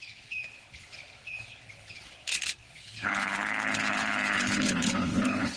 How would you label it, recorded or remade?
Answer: remade